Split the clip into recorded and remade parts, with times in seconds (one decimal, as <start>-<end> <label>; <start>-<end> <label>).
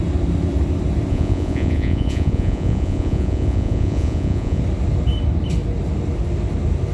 0.0-1.1 recorded; 1.1-4.6 remade; 4.6-6.9 recorded